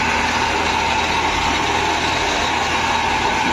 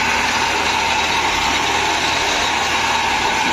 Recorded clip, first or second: first